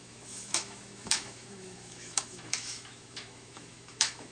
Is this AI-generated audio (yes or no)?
yes